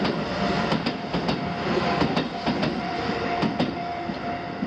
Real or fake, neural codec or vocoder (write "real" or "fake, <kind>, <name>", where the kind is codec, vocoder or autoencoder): real